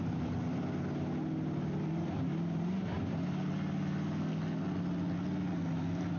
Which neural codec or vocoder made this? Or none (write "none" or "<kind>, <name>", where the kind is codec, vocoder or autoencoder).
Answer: none